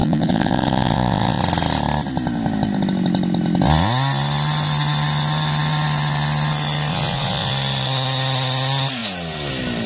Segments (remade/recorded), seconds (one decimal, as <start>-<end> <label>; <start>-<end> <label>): 0.0-1.4 remade; 1.4-6.9 recorded; 6.9-7.5 remade; 7.5-9.9 recorded